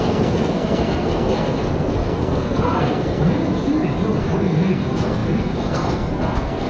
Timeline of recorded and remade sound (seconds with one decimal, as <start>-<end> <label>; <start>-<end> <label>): 0.0-3.4 remade; 3.4-4.2 recorded; 4.2-6.7 remade